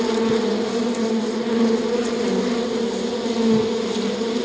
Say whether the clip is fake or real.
real